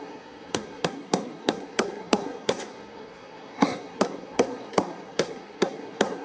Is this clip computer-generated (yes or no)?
yes